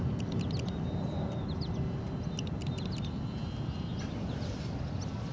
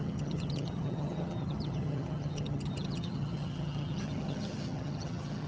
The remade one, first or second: second